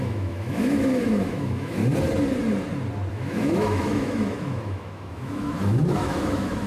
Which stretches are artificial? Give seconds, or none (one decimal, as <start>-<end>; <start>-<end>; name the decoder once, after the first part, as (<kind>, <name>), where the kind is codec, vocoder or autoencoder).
0.0-1.8 (autoencoder, DAC-VAE); 3.1-6.7

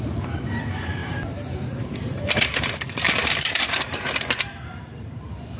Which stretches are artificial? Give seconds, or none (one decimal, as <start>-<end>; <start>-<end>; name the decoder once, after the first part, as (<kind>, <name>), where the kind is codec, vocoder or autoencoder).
0.0-5.6 (vocoder, BigVGAN v2)